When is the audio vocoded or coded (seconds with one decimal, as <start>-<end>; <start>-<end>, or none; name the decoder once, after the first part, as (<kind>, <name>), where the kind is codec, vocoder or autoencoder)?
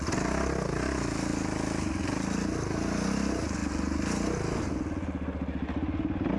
none